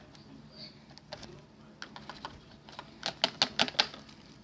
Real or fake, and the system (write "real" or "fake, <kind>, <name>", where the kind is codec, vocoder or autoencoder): real